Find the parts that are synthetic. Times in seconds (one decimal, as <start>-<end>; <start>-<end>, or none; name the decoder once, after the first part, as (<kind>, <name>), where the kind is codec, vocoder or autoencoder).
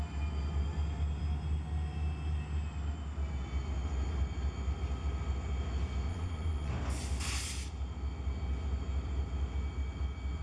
6.1-6.7 (vocoder, Vocos)